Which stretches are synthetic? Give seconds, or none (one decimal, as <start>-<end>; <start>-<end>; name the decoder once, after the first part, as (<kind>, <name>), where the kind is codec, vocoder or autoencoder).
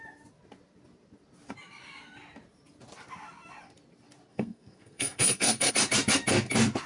4.3-5.7 (codec, SNAC)